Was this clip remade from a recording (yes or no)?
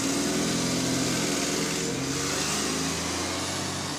no